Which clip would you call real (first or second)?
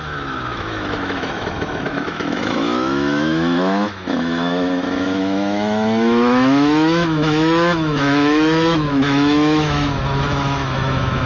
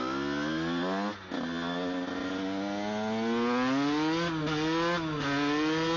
second